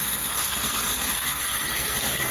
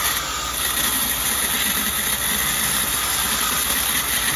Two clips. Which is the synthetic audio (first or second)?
first